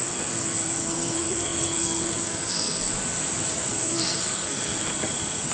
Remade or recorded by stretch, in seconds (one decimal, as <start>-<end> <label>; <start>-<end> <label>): 0.0-2.9 remade; 2.9-3.7 recorded; 3.7-4.9 remade; 4.9-5.5 recorded